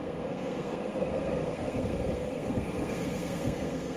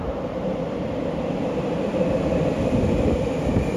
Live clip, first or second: second